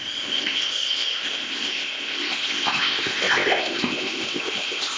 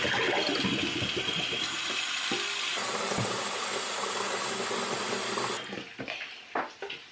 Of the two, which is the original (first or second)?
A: second